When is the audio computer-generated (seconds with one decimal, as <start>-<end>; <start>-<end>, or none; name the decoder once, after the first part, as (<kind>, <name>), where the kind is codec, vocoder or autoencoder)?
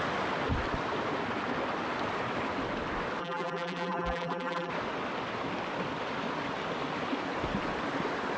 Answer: 3.2-4.7 (vocoder, BigVGAN v2)